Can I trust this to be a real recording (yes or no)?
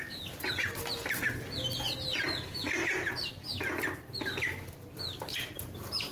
yes